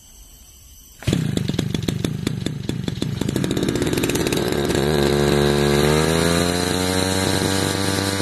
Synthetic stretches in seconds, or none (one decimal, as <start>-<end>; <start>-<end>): 2.2-5.1

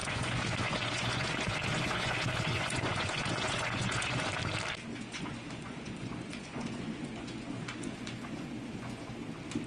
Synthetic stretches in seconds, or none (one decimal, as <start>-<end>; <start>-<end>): 0.0-4.3; 4.9-9.1

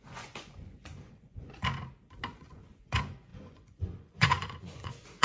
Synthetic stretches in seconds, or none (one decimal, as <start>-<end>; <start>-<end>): 0.0-1.7; 2.4-5.2

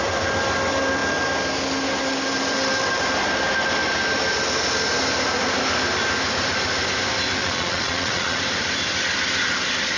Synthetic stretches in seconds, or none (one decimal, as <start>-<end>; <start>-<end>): 7.4-8.4

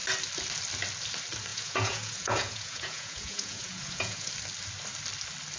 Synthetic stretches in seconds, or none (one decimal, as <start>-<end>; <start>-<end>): 1.5-4.3

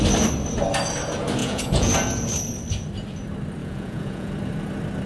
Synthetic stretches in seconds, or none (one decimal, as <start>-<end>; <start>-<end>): 1.4-1.9; 3.6-4.3